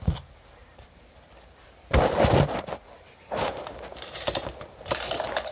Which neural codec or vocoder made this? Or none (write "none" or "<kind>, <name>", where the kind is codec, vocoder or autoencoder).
vocoder, BigVGAN v2